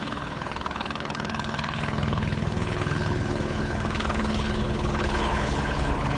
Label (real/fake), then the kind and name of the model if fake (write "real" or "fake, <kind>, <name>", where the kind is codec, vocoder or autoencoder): fake, codec, HILCodec